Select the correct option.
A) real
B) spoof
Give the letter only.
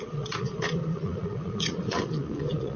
B